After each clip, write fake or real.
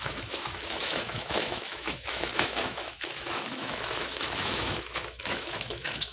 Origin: fake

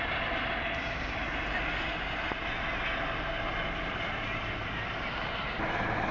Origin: real